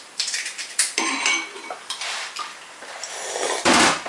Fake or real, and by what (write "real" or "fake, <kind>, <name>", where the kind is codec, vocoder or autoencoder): fake, vocoder, BigVGAN v2